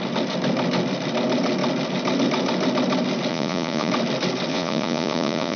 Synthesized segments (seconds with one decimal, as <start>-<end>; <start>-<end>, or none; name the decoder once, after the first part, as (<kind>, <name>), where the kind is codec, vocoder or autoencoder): 3.3-3.9 (vocoder, Vocos); 4.5-5.6